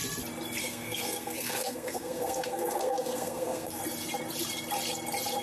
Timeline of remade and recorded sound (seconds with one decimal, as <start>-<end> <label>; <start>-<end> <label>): 0.0-0.6 recorded; 0.6-3.8 remade; 3.8-5.4 recorded